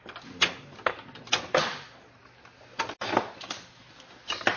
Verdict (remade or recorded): recorded